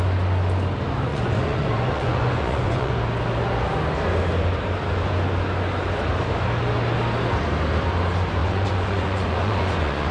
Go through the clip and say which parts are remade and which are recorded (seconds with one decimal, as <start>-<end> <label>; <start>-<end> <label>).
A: 0.0-1.1 recorded; 1.1-2.9 remade; 2.9-8.4 recorded; 8.4-10.1 remade